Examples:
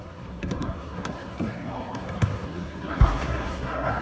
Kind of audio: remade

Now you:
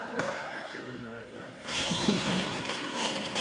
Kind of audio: remade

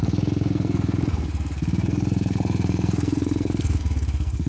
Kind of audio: remade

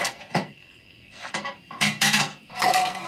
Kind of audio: remade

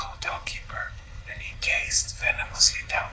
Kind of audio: remade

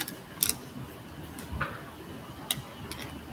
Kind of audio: recorded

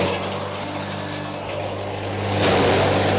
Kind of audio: recorded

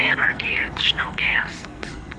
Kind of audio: remade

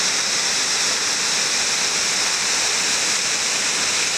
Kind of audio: recorded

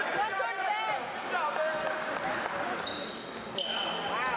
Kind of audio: recorded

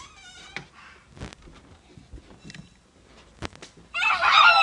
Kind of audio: recorded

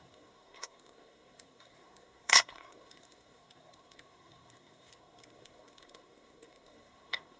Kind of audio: remade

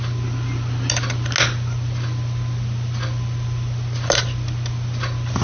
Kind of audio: recorded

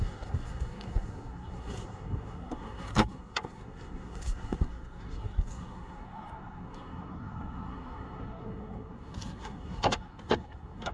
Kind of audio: remade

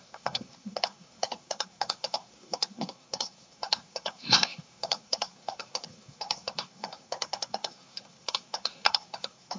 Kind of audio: remade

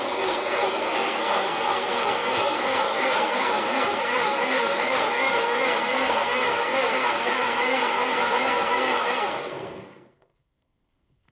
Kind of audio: remade